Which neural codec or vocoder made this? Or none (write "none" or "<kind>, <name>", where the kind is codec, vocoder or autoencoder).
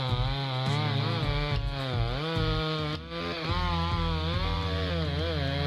none